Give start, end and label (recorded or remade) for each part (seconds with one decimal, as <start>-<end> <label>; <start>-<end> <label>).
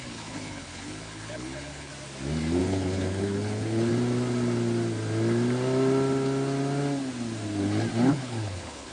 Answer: 0.0-1.9 remade; 1.9-2.6 recorded; 2.6-3.9 remade; 3.9-8.1 recorded; 8.1-8.9 remade